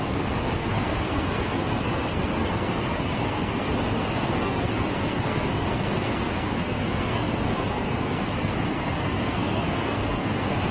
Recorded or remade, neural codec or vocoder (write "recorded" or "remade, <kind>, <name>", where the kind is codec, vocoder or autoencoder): remade, codec, SNAC